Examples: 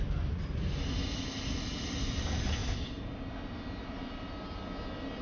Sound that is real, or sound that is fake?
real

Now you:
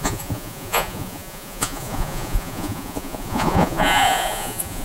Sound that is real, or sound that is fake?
fake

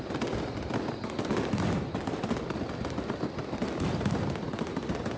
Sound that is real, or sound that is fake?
real